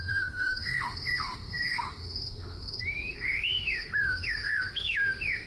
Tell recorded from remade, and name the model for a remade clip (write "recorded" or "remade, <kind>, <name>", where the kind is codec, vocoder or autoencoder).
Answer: remade, autoencoder, DAC-VAE